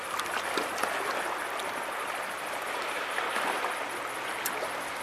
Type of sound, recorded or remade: recorded